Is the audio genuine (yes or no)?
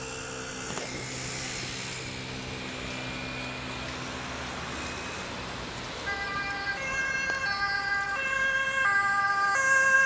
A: yes